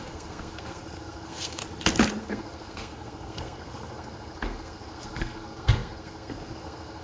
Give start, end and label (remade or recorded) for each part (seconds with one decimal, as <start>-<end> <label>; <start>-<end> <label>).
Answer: 0.0-1.6 remade; 1.6-2.2 recorded; 2.2-7.0 remade